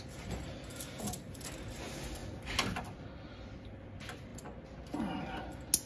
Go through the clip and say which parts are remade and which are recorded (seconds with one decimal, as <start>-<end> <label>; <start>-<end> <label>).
0.0-5.9 recorded